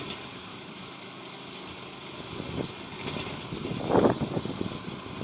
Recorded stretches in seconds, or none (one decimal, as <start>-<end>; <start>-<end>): 0.0-0.5; 1.2-5.2